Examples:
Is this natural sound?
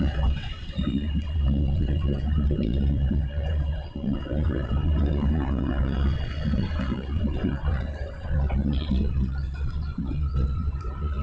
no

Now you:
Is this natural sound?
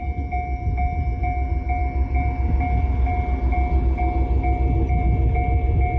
yes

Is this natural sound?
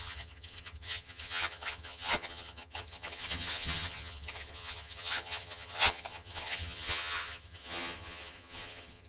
no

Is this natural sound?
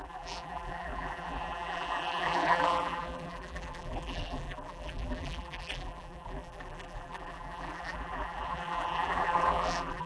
no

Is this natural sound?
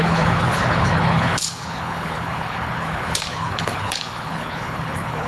no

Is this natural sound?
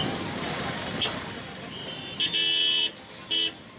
yes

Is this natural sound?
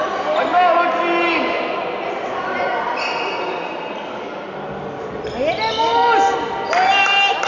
yes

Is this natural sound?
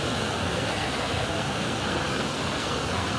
no